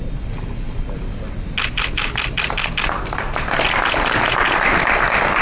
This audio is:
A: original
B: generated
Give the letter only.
A